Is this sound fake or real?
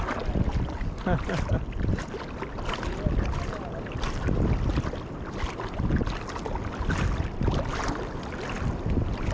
real